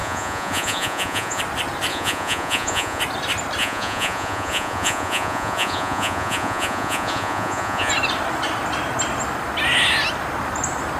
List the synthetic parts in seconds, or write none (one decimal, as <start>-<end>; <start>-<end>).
0.0-1.4; 1.9-3.0; 3.6-7.9